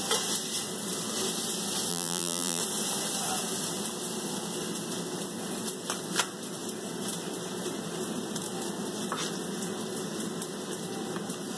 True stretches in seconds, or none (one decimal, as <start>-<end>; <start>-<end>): 0.0-1.9; 2.6-11.6